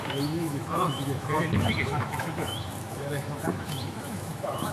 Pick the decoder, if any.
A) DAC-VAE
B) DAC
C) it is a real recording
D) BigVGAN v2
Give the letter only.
A